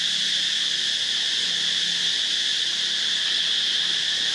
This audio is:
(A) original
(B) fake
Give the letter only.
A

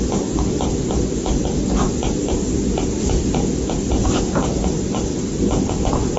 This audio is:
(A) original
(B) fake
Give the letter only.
A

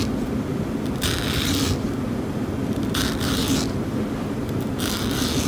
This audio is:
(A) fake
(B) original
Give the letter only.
B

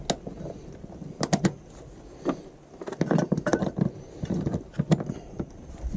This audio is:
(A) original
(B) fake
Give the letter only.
A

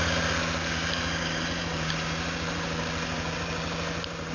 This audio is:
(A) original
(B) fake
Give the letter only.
A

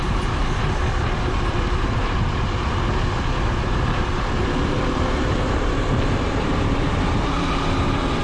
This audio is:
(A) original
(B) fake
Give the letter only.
B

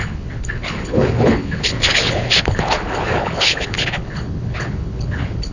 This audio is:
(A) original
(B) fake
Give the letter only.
B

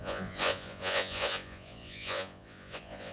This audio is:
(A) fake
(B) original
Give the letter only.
A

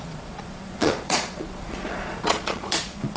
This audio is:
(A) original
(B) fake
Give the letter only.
B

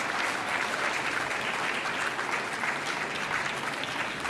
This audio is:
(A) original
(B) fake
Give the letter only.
A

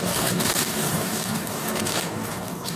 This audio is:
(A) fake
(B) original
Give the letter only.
A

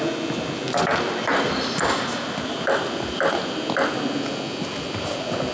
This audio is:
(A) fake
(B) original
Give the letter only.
B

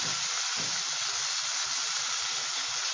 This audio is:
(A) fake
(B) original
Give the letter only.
B